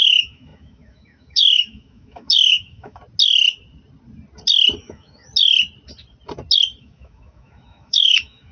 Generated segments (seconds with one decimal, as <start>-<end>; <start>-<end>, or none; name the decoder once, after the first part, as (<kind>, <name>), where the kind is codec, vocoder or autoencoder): 0.0-3.0 (autoencoder, DAC-VAE); 4.8-5.2; 6.8-8.5